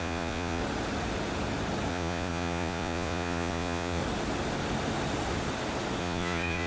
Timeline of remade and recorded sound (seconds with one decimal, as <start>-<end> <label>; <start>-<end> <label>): 0.0-0.6 remade; 0.6-1.9 recorded; 1.9-4.0 remade; 4.0-6.0 recorded; 6.0-6.7 remade